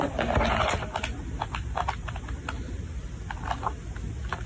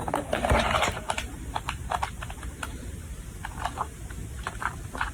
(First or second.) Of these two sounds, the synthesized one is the second